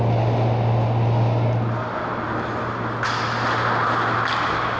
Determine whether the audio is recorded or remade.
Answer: recorded